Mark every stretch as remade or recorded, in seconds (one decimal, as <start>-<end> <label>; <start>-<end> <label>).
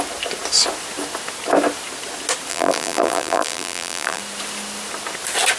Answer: 0.0-2.5 recorded; 2.5-4.2 remade; 4.2-5.6 recorded